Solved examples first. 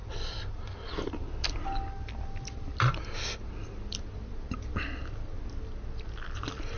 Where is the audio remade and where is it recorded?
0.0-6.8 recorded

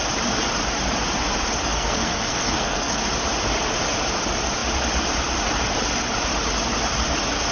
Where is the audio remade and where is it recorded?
0.0-1.6 recorded; 1.6-3.0 remade; 3.0-7.5 recorded

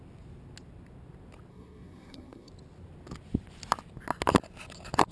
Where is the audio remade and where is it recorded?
0.0-1.5 recorded; 1.5-2.5 remade; 2.5-5.1 recorded

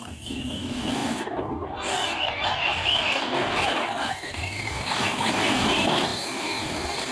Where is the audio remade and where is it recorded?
0.0-7.1 remade

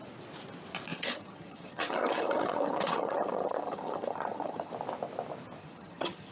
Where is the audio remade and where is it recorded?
0.0-0.9 recorded; 0.9-4.7 remade; 4.7-5.6 recorded; 5.6-6.3 remade